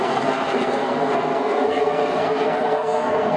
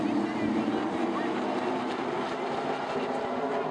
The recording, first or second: second